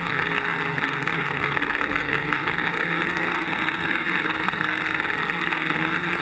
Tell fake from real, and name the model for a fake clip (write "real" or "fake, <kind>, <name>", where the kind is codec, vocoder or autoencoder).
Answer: fake, codec, SNAC